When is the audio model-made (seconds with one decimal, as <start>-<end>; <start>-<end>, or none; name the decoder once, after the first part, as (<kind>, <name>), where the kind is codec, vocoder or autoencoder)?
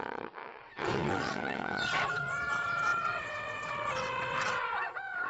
0.0-5.3 (vocoder, WaveNeXt)